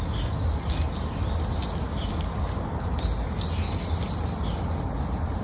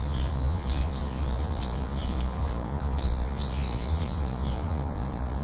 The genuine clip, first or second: first